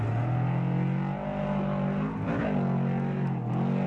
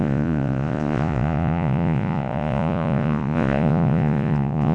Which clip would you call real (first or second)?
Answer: first